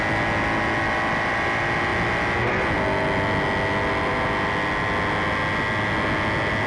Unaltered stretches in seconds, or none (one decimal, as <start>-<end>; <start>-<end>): 0.0-6.7